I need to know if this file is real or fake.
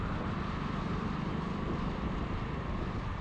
real